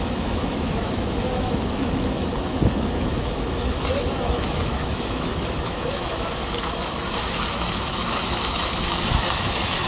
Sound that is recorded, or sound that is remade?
remade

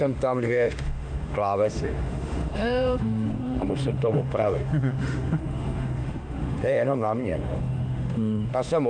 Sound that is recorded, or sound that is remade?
remade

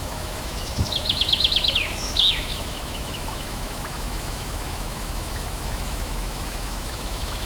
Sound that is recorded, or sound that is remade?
remade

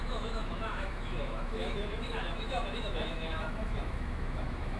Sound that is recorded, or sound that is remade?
remade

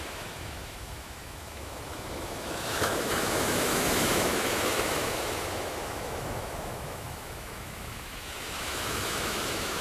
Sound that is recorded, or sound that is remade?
remade